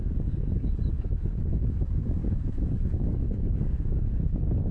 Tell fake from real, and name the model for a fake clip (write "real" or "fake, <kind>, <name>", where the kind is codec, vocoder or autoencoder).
fake, codec, DAC